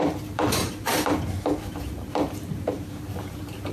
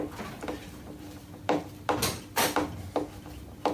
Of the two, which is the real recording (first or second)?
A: second